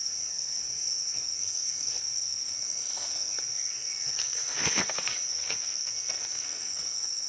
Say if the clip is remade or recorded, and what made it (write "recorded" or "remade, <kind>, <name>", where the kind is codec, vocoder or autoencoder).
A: remade, codec, SNAC